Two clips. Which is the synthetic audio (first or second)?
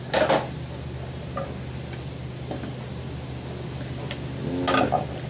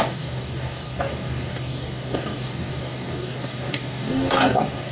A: second